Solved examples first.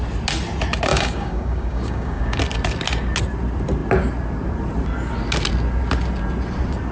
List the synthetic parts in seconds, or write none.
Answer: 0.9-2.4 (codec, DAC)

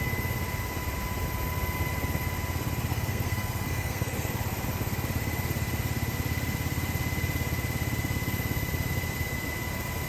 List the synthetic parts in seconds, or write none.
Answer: 2.9-4.3 (codec, SNAC)